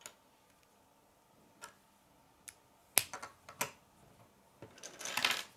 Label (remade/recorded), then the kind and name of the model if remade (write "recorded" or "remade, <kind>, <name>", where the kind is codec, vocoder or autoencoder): recorded